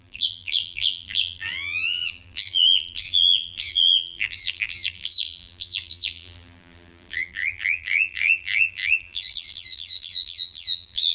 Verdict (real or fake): fake